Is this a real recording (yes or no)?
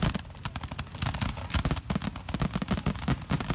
yes